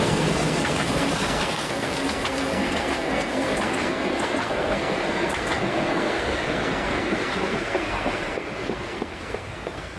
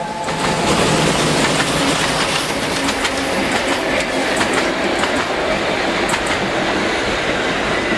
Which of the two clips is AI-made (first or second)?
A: first